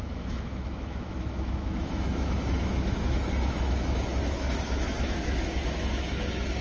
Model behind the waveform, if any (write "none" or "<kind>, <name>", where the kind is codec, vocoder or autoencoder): autoencoder, DAC-VAE